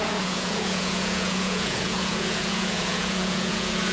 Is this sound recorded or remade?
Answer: remade